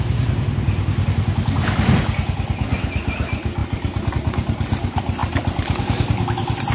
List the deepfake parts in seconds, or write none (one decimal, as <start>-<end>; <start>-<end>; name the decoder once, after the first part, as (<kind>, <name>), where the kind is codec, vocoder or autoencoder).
none